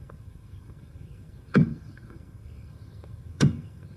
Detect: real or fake fake